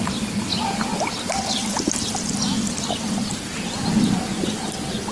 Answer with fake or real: real